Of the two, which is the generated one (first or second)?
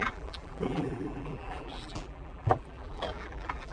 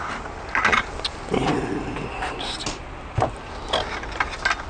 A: first